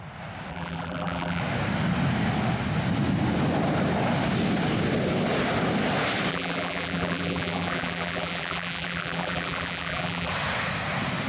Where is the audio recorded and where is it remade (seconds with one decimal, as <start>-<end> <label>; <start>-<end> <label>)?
0.0-0.5 recorded; 0.5-1.4 remade; 1.4-6.3 recorded; 6.3-10.3 remade; 10.3-11.3 recorded